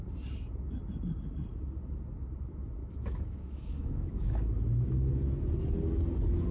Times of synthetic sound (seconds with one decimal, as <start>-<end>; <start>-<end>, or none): 2.8-4.6